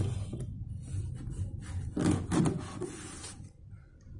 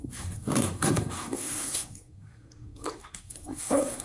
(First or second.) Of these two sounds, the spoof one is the second